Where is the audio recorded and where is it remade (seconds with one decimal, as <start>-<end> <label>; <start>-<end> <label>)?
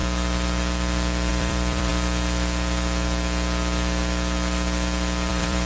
0.0-1.3 recorded; 1.3-1.9 remade; 1.9-5.3 recorded; 5.3-5.7 remade